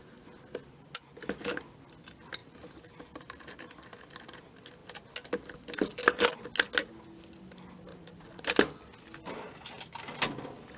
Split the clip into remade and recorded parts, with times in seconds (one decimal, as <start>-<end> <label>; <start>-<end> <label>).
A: 0.0-7.9 recorded; 7.9-8.4 remade; 8.4-10.8 recorded